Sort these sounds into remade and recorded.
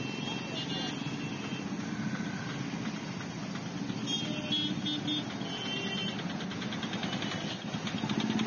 recorded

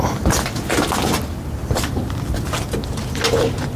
recorded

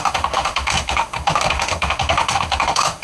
remade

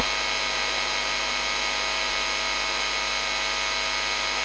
recorded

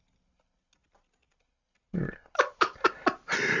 recorded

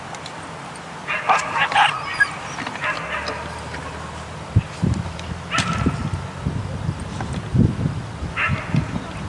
recorded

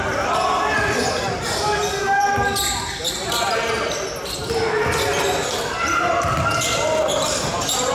recorded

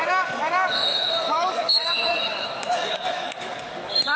remade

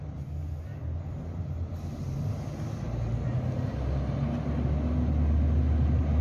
recorded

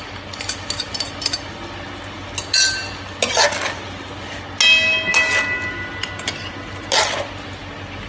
recorded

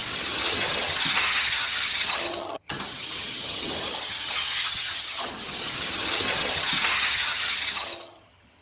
remade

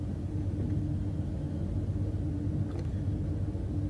recorded